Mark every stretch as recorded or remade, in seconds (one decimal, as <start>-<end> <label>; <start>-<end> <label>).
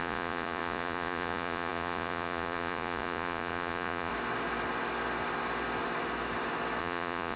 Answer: 0.0-4.1 remade; 4.1-6.8 recorded; 6.8-7.4 remade